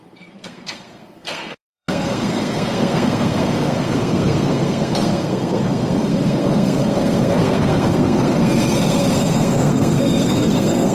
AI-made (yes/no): yes